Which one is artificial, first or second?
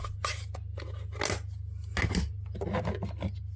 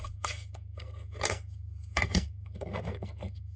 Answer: second